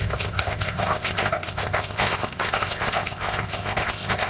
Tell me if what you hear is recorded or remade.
remade